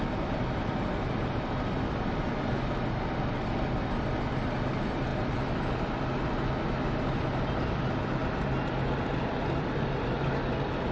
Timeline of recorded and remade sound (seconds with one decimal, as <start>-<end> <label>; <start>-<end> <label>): 0.0-10.9 recorded